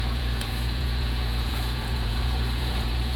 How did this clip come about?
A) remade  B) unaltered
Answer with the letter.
A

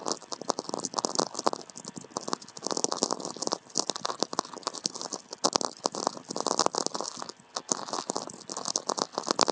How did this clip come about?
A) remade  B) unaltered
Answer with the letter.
B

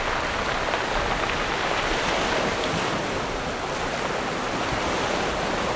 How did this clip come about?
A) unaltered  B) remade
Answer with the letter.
A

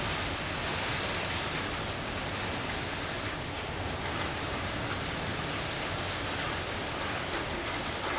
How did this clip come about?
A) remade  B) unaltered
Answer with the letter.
B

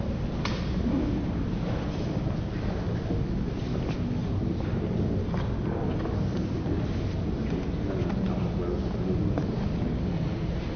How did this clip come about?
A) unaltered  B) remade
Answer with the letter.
A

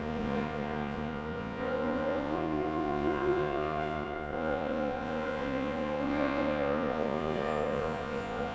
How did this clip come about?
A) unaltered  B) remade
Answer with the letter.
B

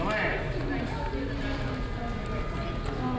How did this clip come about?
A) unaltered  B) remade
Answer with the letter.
A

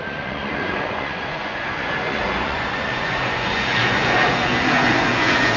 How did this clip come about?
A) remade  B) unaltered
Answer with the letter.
A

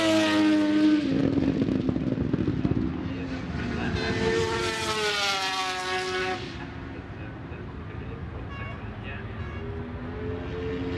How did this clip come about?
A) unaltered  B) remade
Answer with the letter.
A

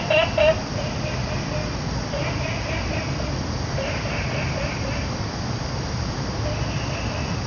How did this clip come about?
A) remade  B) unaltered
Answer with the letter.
B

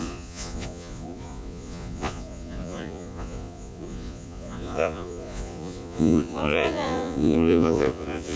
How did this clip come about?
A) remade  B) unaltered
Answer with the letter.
A